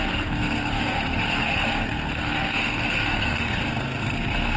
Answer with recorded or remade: remade